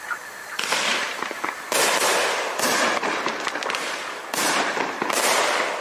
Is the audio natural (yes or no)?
yes